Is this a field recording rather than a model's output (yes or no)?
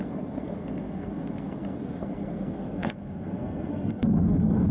no